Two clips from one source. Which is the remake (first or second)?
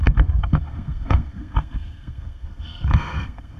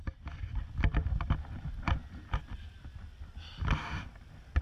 first